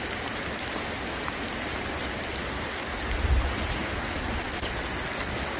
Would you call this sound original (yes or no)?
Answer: yes